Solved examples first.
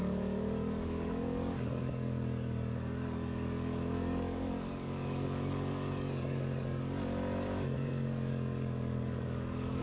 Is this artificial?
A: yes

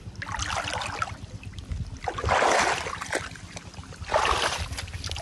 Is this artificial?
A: no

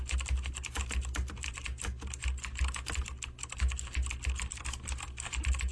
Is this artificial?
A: no